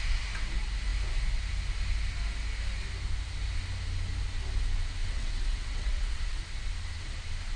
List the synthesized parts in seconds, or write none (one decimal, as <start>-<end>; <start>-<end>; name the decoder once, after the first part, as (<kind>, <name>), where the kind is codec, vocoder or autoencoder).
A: 5.0-6.4 (vocoder, WaveNeXt)